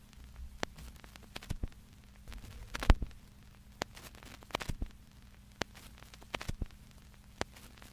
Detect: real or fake real